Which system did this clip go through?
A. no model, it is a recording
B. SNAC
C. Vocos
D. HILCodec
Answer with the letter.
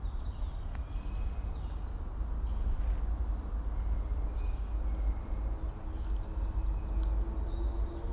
A